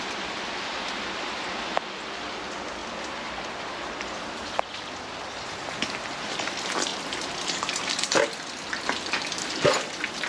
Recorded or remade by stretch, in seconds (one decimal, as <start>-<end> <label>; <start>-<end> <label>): 0.0-10.3 recorded